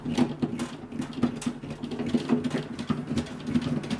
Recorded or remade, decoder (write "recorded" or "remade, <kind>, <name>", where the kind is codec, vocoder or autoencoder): recorded